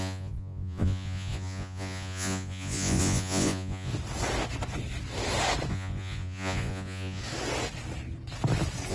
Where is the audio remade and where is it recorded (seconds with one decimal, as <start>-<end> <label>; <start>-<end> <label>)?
0.0-3.9 remade; 3.9-5.7 recorded; 5.7-7.2 remade; 7.2-8.9 recorded